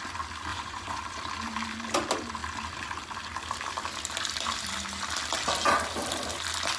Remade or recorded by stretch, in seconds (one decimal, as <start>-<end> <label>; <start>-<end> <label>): 0.0-0.5 recorded; 0.5-1.0 remade; 1.0-6.8 recorded